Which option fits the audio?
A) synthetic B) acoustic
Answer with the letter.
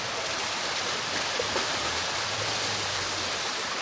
B